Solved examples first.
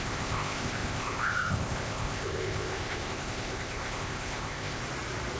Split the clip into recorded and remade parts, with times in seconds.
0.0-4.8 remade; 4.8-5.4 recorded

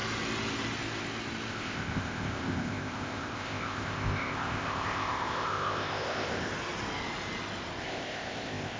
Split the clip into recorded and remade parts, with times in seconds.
0.0-1.5 recorded; 1.5-6.5 remade; 6.5-7.8 recorded; 7.8-8.8 remade

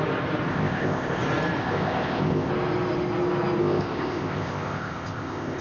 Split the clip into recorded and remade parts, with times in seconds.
0.0-0.5 recorded; 0.5-1.2 remade; 1.2-1.6 recorded; 1.6-2.5 remade; 2.5-3.6 recorded; 3.6-5.6 remade

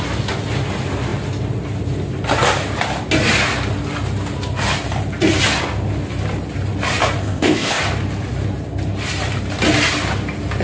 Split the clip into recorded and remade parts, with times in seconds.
0.0-7.2 recorded; 7.2-7.8 remade; 7.8-10.6 recorded

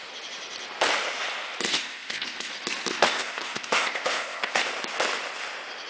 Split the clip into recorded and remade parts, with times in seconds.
0.0-1.7 recorded; 1.7-2.5 remade; 2.5-2.9 recorded; 2.9-4.7 remade; 4.7-5.9 recorded

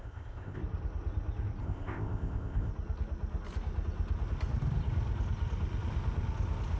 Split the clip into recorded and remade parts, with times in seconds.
0.0-0.6 remade; 0.6-1.6 recorded; 1.6-2.7 remade; 2.7-6.8 recorded

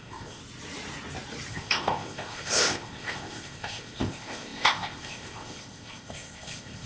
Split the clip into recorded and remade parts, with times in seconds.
0.0-0.4 remade; 0.4-1.5 recorded; 1.5-6.9 remade

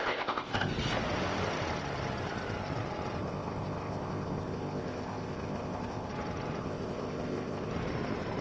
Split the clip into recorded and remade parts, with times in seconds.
0.0-0.7 remade; 0.7-3.2 recorded; 3.2-6.1 remade; 6.1-6.6 recorded; 6.6-7.7 remade; 7.7-8.4 recorded